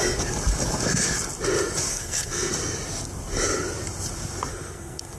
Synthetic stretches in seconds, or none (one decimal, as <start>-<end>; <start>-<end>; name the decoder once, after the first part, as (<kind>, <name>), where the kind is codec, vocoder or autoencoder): 1.9-2.5 (codec, SNAC); 4.5-5.2